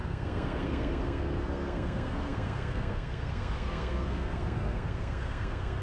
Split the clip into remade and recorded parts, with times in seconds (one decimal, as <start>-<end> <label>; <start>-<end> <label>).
0.0-5.8 remade